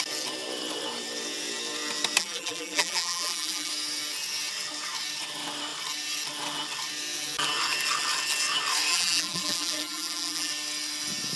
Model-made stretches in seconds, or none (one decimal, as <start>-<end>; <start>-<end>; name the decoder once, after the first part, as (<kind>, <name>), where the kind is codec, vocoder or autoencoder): 2.2-3.7 (vocoder, BigVGAN v2); 8.9-10.5